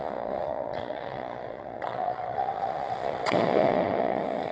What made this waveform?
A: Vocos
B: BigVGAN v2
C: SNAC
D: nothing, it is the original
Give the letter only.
A